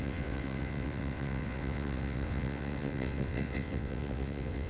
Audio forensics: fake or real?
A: fake